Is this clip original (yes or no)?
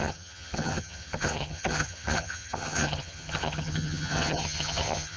no